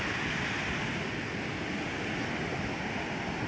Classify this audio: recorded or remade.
recorded